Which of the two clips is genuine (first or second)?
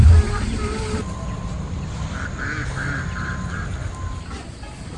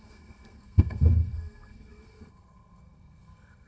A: first